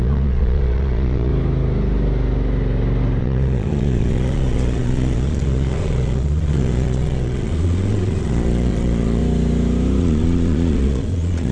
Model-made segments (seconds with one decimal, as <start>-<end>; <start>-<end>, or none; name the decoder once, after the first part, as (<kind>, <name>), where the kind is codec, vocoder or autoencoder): 0.0-1.3 (vocoder, Vocos); 3.2-9.2; 10.0-11.5